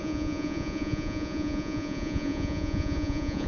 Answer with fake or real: fake